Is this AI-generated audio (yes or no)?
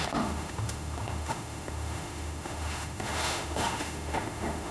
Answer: yes